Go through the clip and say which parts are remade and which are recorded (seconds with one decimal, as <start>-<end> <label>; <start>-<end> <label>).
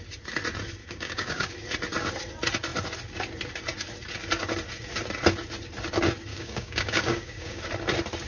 0.0-0.8 recorded; 0.8-1.5 remade; 1.5-6.3 recorded; 6.3-7.6 remade; 7.6-8.3 recorded